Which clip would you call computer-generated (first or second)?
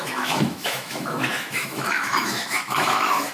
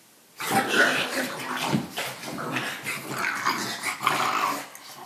first